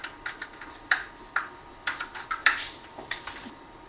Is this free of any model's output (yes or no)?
no